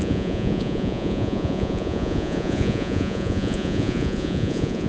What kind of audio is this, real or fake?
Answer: fake